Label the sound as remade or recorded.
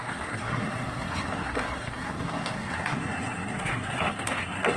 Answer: remade